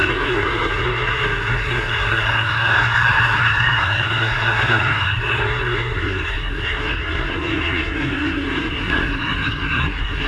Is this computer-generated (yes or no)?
yes